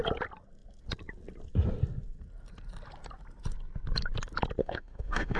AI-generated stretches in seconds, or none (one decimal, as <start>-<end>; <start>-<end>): 4.6-5.4